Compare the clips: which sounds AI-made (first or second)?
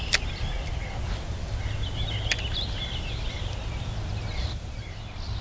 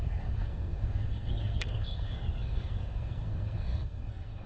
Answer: second